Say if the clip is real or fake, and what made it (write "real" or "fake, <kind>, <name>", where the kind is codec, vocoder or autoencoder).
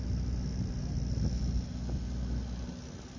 real